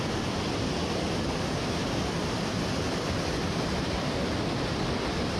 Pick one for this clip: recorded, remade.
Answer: recorded